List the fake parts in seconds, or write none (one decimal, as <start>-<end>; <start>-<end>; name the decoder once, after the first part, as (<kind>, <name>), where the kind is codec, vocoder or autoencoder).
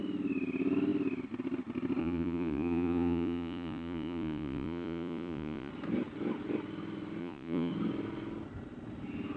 2.0-5.7 (vocoder, Vocos); 7.2-7.7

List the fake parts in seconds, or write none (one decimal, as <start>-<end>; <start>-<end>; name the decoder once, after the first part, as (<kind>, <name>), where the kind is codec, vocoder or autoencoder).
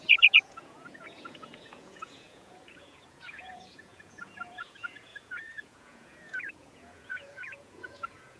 0.0-8.4 (vocoder, Vocos)